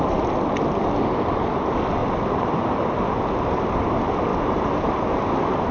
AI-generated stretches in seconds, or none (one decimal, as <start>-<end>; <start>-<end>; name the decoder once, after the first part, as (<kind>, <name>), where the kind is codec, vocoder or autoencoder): 2.0-3.2 (vocoder, BigVGAN v2); 4.3-4.9